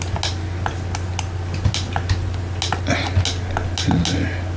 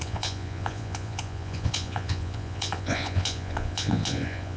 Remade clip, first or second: second